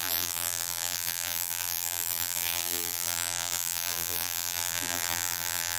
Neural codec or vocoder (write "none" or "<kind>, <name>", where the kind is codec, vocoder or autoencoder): vocoder, BigVGAN v2